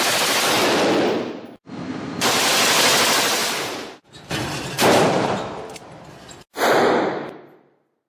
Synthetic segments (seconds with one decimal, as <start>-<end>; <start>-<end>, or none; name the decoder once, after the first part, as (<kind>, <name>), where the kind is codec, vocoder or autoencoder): 3.4-5.3 (vocoder, BigVGAN v2)